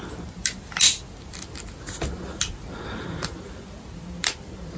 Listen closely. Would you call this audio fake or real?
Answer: real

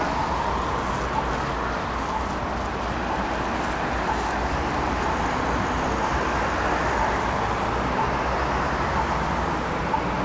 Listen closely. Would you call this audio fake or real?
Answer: real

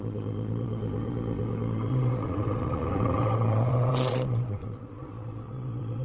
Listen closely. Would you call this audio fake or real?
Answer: fake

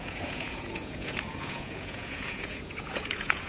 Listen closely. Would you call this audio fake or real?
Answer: fake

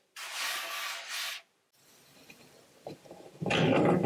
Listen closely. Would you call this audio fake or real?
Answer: real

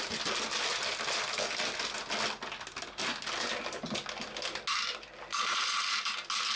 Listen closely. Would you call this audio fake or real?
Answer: real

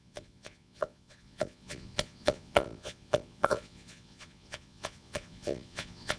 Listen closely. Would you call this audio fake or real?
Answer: fake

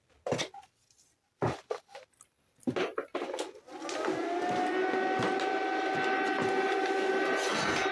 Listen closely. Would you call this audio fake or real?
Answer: real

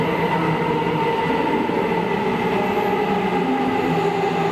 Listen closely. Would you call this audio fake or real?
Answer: real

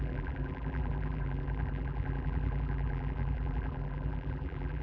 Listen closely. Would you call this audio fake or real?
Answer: fake